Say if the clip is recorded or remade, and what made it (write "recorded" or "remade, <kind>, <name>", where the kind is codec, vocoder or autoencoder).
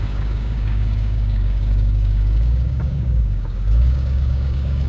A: remade, codec, DAC